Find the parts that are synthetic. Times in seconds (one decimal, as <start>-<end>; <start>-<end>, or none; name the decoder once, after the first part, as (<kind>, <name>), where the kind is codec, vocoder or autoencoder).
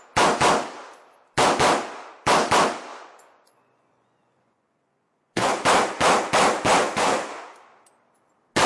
2.9-5.5 (vocoder, Vocos); 6.8-7.4